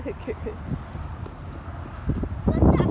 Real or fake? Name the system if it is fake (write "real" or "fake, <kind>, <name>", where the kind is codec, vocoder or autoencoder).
real